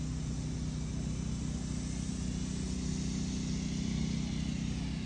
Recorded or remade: recorded